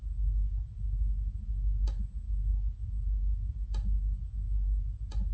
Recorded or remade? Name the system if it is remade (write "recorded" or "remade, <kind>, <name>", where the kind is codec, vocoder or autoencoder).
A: recorded